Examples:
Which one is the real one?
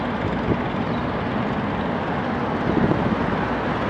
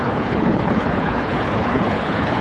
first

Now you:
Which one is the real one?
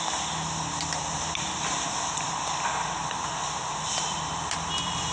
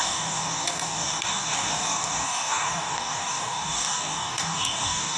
first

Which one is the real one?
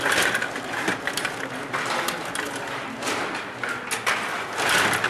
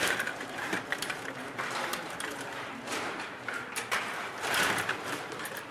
first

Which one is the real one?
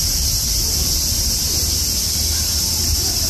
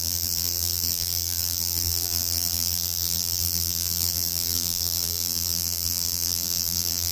first